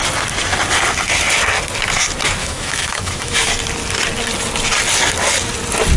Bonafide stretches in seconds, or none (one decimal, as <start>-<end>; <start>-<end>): 0.0-2.4; 3.5-6.0